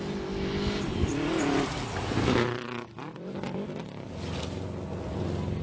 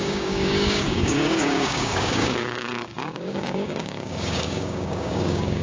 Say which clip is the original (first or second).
first